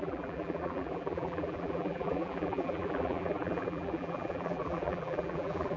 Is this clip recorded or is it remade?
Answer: remade